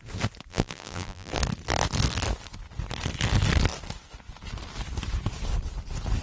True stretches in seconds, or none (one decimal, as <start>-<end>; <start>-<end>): 0.0-0.5; 1.3-6.2